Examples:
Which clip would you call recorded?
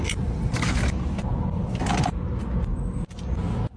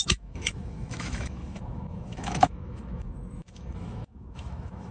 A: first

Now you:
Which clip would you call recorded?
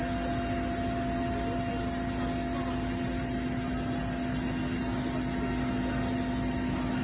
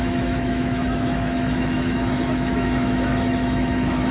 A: first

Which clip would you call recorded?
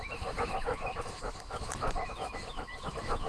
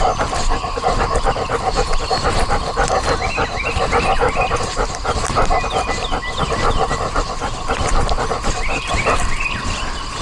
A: second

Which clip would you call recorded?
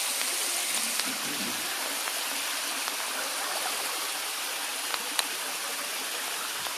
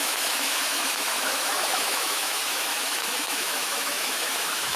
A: first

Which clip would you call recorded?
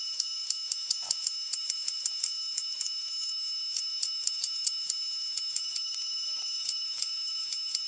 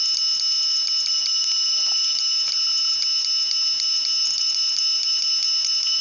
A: second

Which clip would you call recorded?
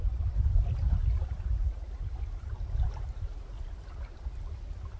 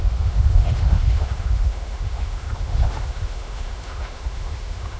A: first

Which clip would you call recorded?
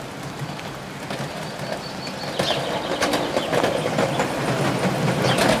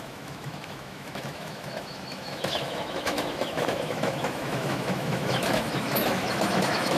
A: first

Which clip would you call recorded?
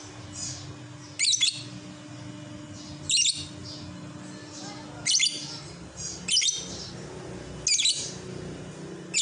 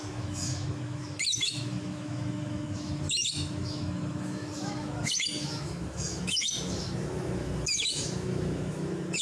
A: first